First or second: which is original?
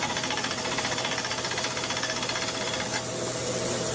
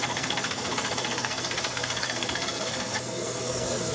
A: first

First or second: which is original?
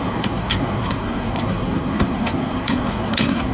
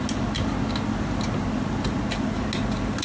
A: second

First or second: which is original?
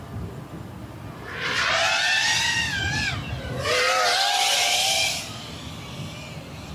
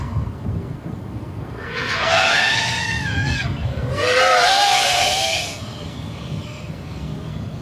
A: first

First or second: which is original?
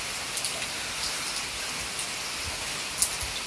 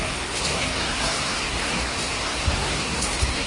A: first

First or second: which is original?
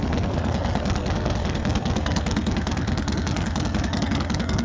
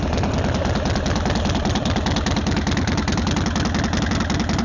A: second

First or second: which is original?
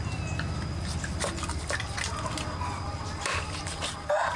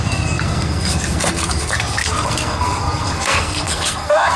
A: first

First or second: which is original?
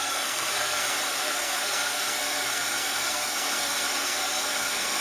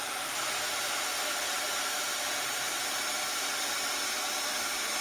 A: second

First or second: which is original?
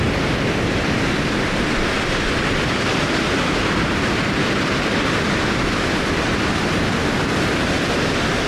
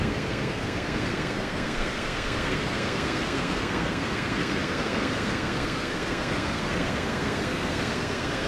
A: first